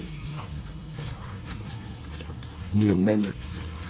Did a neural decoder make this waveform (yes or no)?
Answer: yes